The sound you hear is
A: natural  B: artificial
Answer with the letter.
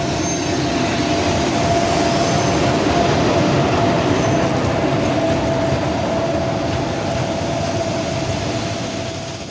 A